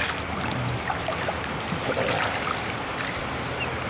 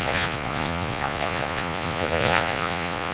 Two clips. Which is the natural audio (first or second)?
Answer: first